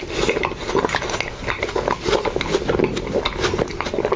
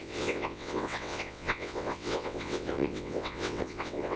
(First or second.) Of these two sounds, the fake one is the second